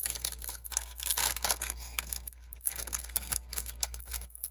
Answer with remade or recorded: remade